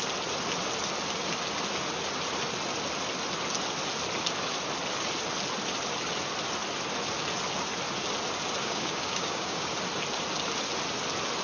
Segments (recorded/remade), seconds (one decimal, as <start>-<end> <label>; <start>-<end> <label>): 0.0-8.6 recorded; 8.6-9.7 remade; 9.7-11.4 recorded